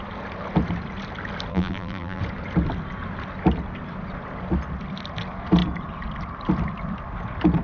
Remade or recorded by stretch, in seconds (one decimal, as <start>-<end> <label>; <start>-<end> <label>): 0.0-1.5 recorded; 1.5-2.2 remade; 2.2-7.6 recorded